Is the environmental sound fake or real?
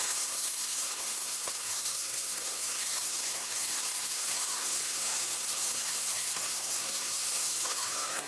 fake